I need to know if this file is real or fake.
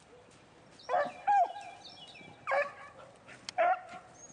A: real